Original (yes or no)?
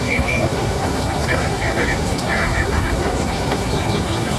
no